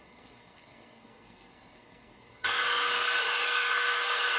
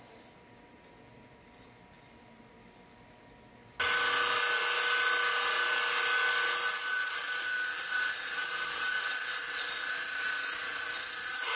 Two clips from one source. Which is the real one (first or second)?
second